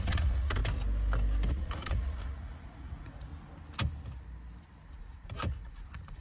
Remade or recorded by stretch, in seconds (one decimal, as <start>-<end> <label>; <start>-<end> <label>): 0.0-0.6 remade; 0.6-1.5 recorded; 1.5-3.3 remade; 3.3-4.9 recorded; 4.9-6.2 remade

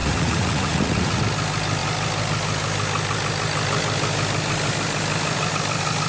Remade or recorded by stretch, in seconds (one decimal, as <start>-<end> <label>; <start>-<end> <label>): 0.0-1.2 remade; 1.2-6.1 recorded

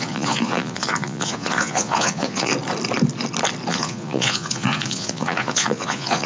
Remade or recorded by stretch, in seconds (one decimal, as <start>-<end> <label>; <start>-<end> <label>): 0.0-2.5 remade; 2.5-3.7 recorded; 3.7-6.3 remade

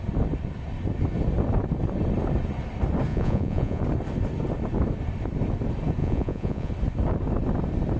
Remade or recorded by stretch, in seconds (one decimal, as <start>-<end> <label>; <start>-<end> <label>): 0.0-3.1 recorded; 3.1-3.8 remade; 3.8-6.0 recorded; 6.0-6.7 remade; 6.7-8.0 recorded

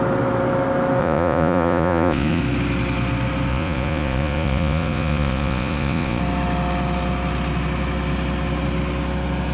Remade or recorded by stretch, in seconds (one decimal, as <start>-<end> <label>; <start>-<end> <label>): 0.0-1.0 recorded; 1.0-2.4 remade; 2.4-3.5 recorded; 3.5-6.2 remade; 6.2-9.5 recorded